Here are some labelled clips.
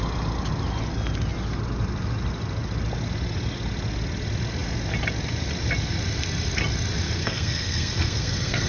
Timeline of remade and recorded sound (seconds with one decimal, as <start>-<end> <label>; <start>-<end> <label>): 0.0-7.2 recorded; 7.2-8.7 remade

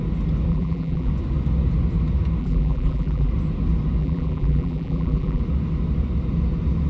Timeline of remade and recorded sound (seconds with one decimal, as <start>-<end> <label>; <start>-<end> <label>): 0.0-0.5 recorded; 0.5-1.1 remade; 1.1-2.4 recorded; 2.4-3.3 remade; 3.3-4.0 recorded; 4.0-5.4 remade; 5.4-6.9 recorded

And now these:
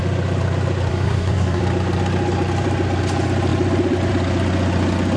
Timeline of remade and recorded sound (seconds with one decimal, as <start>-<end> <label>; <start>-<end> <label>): 0.0-0.9 recorded; 0.9-1.6 remade; 1.6-5.2 recorded

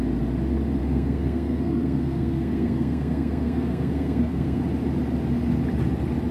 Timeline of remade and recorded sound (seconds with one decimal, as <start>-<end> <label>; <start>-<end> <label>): 0.0-0.8 recorded; 0.8-4.6 remade; 4.6-6.3 recorded